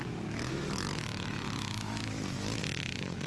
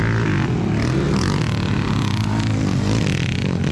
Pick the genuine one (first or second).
second